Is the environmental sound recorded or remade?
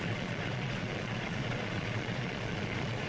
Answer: remade